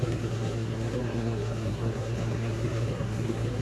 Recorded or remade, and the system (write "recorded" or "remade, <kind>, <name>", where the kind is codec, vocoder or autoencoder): remade, codec, SNAC